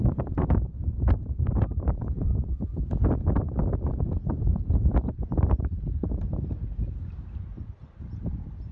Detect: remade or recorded remade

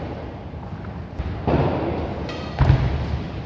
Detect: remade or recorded recorded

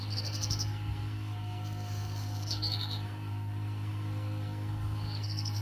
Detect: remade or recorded remade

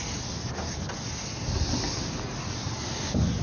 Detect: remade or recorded recorded